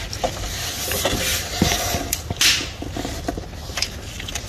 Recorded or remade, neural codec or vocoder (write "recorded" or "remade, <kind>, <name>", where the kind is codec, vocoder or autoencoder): recorded